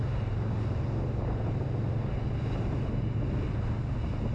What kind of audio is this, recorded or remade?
recorded